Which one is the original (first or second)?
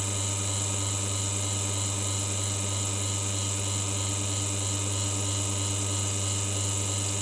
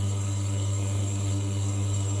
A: first